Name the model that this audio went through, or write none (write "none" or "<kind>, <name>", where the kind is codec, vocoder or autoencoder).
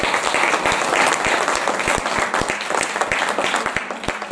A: none